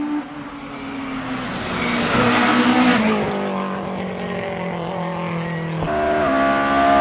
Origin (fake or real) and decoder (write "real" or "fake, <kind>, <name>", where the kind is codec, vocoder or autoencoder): real